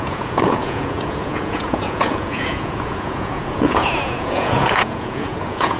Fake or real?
fake